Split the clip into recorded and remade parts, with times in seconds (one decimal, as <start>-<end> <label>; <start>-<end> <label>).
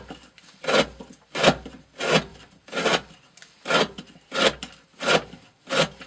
0.0-2.3 recorded; 2.3-3.1 remade; 3.1-6.1 recorded